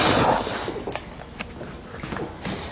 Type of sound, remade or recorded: recorded